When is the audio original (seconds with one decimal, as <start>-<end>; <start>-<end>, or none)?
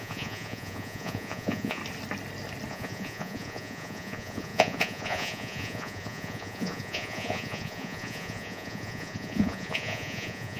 1.8-2.7